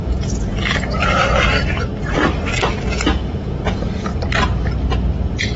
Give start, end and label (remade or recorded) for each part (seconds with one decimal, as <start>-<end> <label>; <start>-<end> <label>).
0.0-0.5 remade; 0.5-3.2 recorded; 3.2-4.1 remade; 4.1-5.6 recorded